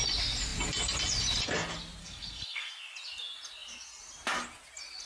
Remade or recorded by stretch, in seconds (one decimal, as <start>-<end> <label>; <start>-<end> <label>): 0.0-2.0 recorded; 2.0-2.7 remade; 2.7-5.1 recorded